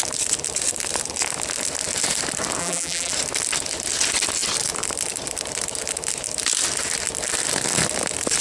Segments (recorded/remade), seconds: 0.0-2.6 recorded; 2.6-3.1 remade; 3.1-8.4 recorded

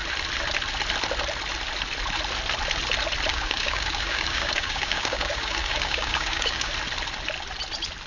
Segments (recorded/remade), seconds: 0.0-3.3 recorded; 3.3-6.7 remade; 6.7-8.1 recorded

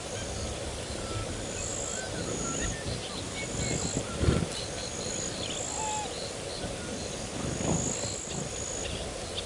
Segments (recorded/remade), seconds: 0.0-9.5 recorded

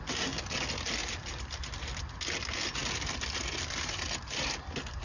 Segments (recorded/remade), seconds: 0.0-5.0 recorded